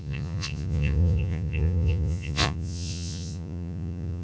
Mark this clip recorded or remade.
remade